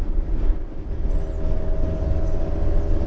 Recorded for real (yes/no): yes